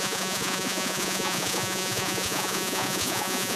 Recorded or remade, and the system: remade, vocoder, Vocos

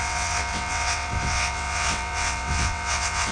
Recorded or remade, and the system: remade, vocoder, WaveNeXt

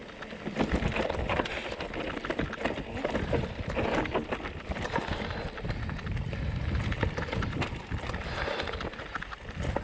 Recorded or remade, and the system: recorded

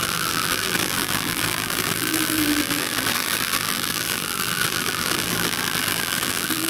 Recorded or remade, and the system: remade, vocoder, BigVGAN v2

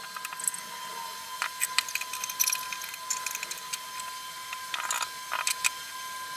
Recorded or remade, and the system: recorded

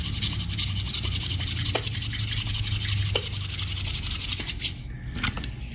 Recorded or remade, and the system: recorded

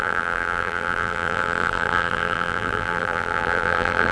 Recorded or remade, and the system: remade, vocoder, BigVGAN v2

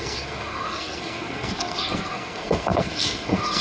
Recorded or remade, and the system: remade, codec, SNAC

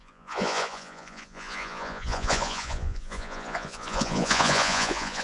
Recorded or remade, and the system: remade, vocoder, Vocos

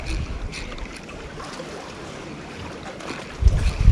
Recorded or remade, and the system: remade, vocoder, BigVGAN v2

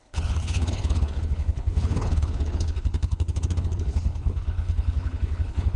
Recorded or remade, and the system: remade, codec, HILCodec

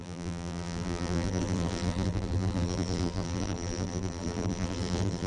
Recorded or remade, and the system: remade, vocoder, BigVGAN v2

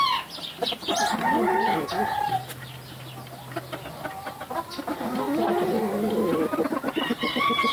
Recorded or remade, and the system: recorded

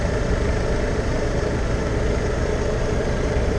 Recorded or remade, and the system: remade, vocoder, BigVGAN v2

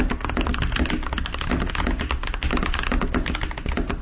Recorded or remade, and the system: recorded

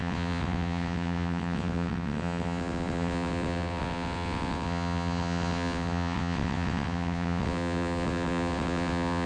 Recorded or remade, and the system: remade, vocoder, WaveNeXt